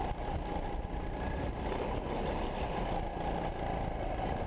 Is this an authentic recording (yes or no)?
yes